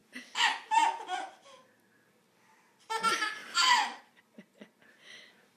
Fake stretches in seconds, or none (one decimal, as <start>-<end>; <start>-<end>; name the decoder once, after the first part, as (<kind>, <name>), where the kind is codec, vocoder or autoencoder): 3.4-4.0 (vocoder, BigVGAN v2)